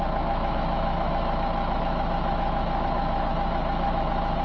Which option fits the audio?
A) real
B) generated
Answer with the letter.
B